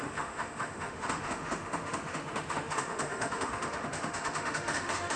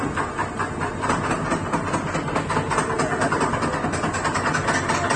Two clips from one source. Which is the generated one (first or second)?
first